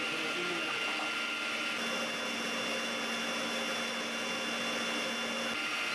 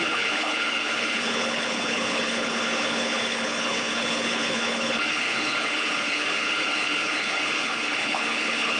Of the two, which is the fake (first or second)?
second